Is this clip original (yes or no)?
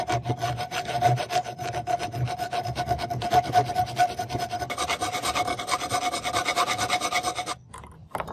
yes